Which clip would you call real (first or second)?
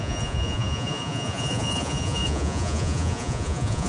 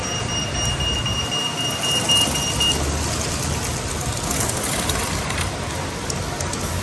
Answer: second